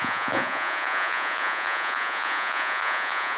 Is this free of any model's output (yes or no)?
no